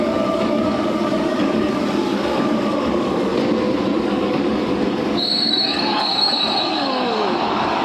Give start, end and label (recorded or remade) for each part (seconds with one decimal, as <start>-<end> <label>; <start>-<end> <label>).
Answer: 0.0-3.3 remade; 3.3-4.0 recorded; 4.0-7.8 remade